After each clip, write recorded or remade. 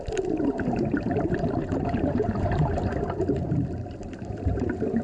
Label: remade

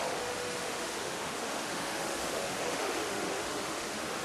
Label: remade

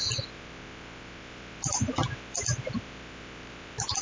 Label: recorded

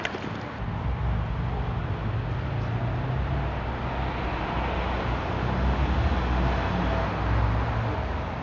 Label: recorded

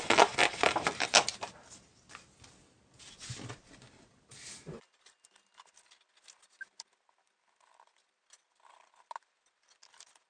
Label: recorded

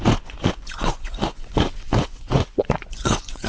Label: remade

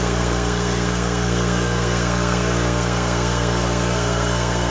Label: remade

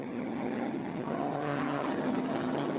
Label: remade